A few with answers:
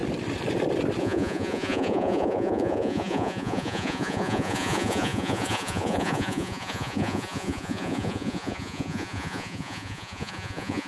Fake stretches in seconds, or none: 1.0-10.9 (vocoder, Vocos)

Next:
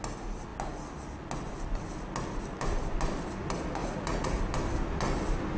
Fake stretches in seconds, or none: 3.8-4.4 (vocoder, Vocos)

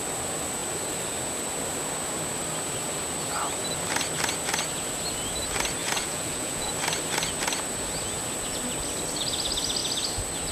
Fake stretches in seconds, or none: 5.8-6.7 (vocoder, Vocos)

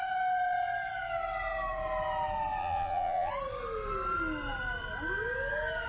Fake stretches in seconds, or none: 2.6-3.3 (vocoder, Vocos)

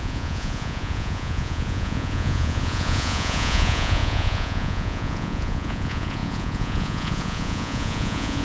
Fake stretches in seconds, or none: 0.0-8.4 (vocoder, Vocos)

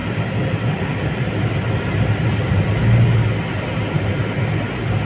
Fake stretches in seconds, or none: none

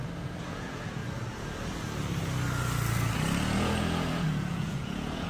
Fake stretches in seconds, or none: 0.5-1.0 (vocoder, Vocos); 3.4-5.3